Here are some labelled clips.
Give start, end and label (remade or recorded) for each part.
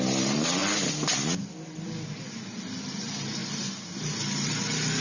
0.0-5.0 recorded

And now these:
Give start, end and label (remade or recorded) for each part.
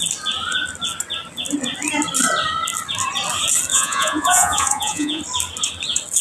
0.0-3.7 recorded; 3.7-5.2 remade; 5.2-6.2 recorded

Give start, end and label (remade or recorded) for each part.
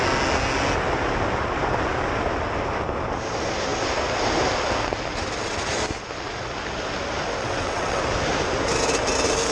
0.0-7.4 recorded; 7.4-8.0 remade; 8.0-9.5 recorded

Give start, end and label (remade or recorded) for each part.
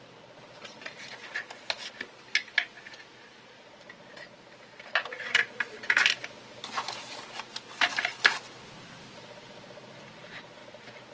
0.0-11.1 recorded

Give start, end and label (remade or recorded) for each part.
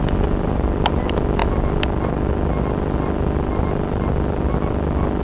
0.0-5.2 recorded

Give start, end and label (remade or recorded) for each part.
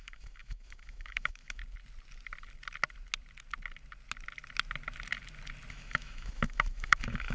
0.0-1.6 remade; 1.6-5.7 recorded; 5.7-7.3 remade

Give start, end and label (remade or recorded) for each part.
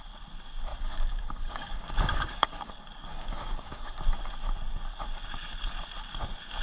0.0-0.7 recorded; 0.7-2.7 remade; 2.7-3.1 recorded; 3.1-4.0 remade; 4.0-6.6 recorded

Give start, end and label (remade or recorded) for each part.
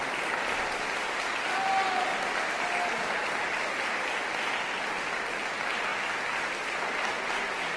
0.0-7.8 recorded